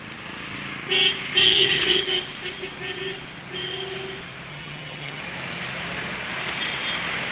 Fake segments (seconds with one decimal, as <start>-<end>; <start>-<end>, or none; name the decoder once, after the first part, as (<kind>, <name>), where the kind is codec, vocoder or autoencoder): 1.4-2.0 (vocoder, HiFi-GAN); 4.5-5.2